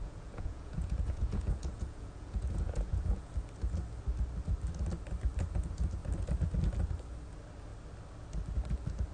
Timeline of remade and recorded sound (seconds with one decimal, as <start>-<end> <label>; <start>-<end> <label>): 0.0-3.3 remade; 3.3-9.1 recorded